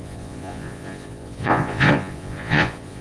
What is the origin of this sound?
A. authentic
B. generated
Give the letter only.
B